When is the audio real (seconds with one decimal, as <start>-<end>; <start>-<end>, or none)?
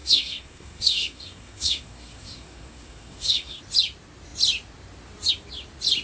3.6-6.0